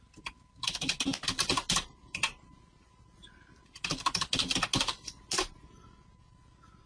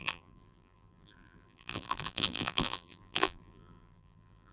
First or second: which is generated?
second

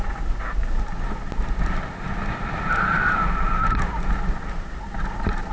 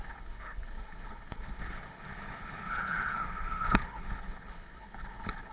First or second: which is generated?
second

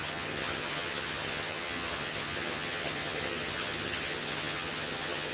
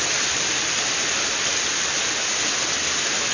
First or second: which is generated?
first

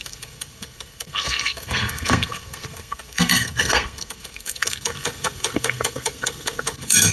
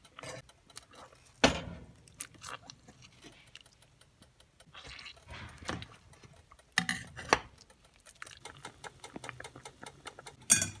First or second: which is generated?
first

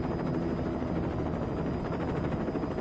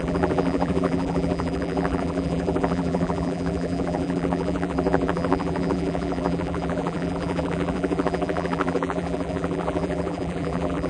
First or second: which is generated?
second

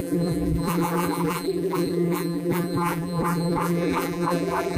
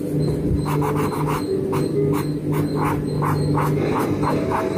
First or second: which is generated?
first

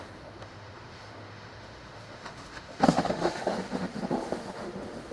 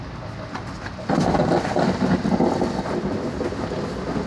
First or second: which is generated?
first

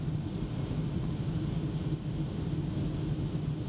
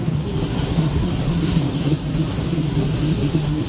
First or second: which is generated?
second